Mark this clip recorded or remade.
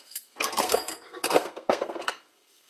remade